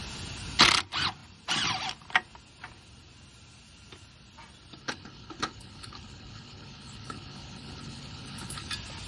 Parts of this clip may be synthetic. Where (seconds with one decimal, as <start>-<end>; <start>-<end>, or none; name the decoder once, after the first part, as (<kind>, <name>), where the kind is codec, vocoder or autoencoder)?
4.8-8.7 (codec, HILCodec)